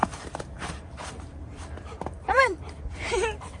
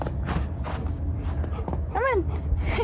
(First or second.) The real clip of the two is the second